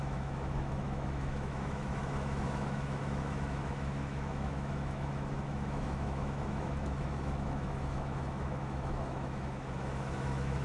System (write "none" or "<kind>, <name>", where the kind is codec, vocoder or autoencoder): autoencoder, DAC-VAE